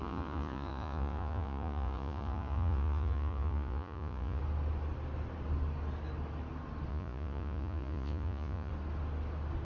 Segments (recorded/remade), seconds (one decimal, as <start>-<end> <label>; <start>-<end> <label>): 0.0-4.4 remade; 4.4-6.9 recorded; 6.9-8.7 remade; 8.7-9.6 recorded